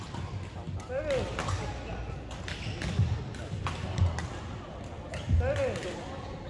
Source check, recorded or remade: recorded